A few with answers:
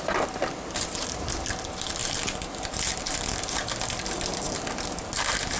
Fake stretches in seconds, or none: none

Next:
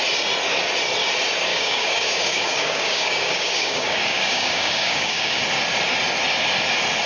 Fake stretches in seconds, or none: 1.5-5.4 (codec, DAC)